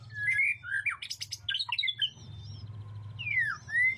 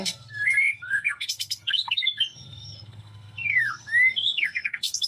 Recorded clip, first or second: first